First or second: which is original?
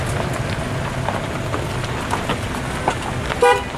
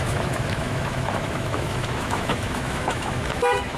first